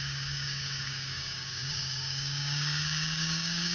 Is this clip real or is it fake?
fake